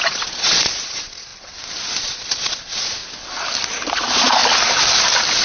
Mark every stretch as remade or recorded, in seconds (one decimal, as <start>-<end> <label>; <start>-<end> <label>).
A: 0.0-1.3 remade; 1.3-2.0 recorded; 2.0-3.0 remade; 3.0-3.9 recorded; 3.9-4.4 remade; 4.4-5.4 recorded